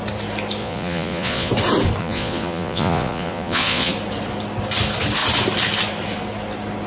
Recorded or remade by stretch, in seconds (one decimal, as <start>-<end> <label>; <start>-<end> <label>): 0.0-0.6 recorded; 0.6-1.5 remade; 1.5-2.0 recorded; 2.0-3.9 remade; 3.9-6.9 recorded

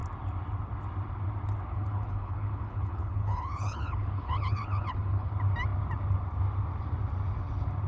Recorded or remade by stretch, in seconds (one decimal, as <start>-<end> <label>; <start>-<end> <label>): 0.0-1.7 recorded; 1.7-5.3 remade; 5.3-7.9 recorded